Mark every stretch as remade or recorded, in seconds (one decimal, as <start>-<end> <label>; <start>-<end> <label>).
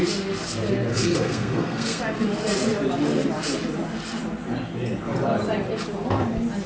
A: 0.0-0.9 recorded; 0.9-2.0 remade; 2.0-6.7 recorded